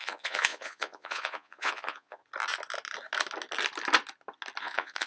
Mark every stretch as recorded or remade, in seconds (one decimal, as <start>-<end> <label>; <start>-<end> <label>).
0.0-2.2 remade; 2.2-4.6 recorded; 4.6-5.1 remade